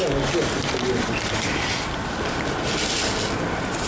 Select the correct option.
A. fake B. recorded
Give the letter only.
B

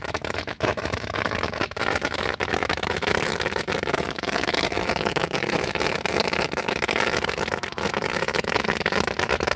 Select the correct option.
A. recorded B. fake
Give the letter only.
B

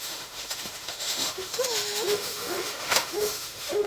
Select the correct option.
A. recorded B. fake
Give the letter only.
B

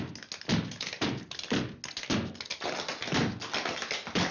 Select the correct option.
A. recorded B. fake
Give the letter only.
A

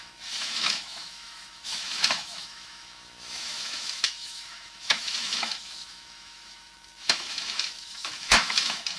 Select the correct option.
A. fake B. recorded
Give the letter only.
A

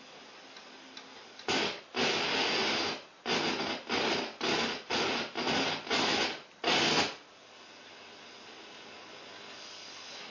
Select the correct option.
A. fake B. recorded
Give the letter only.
B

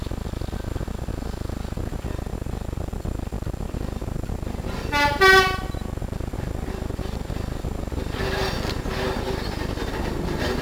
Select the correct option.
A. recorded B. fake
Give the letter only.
A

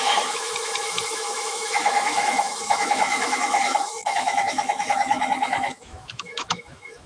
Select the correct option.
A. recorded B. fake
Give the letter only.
B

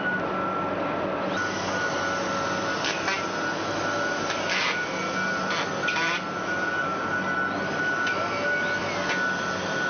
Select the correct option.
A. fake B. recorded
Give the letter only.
B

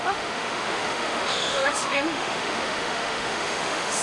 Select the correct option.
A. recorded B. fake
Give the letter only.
B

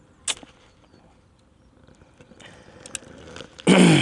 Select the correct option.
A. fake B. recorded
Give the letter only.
B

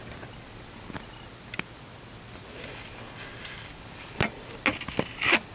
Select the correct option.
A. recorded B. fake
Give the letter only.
A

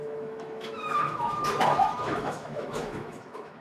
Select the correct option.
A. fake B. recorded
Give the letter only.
A